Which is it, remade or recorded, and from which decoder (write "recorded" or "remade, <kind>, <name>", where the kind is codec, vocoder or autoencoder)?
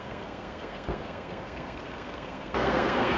remade, codec, SNAC